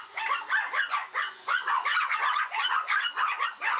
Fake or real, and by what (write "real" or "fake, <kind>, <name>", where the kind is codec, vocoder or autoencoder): fake, vocoder, Vocos